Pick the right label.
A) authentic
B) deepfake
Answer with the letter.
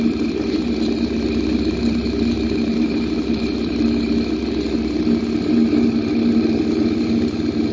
A